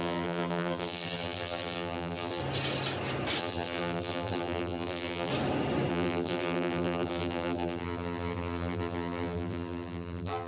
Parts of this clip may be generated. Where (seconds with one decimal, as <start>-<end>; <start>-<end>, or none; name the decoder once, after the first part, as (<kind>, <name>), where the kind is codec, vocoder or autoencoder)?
0.0-2.4 (vocoder, BigVGAN v2); 3.4-5.3; 5.9-10.5